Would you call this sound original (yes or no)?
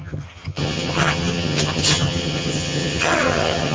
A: no